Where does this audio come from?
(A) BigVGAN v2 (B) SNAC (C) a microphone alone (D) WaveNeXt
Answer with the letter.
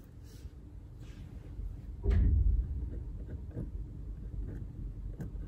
C